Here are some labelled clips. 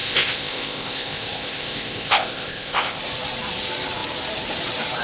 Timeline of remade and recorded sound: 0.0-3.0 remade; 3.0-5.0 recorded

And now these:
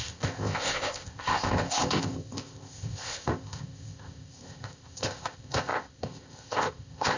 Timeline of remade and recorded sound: 0.0-7.2 remade

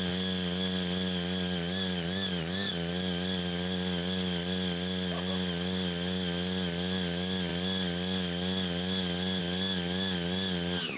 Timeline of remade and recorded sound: 0.0-11.0 recorded

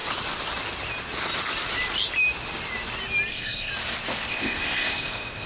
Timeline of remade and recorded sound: 0.0-3.3 recorded; 3.3-3.7 remade; 3.7-4.3 recorded; 4.3-5.5 remade